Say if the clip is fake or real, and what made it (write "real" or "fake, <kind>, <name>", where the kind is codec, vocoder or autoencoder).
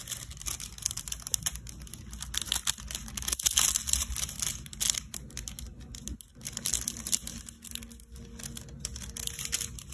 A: real